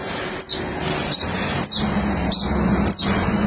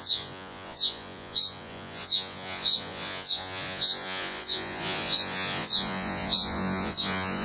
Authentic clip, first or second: first